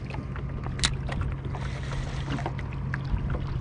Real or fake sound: real